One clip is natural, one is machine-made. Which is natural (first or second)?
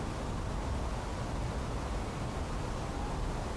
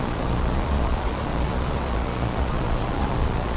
first